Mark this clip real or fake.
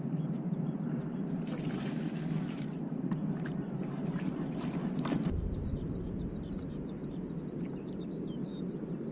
fake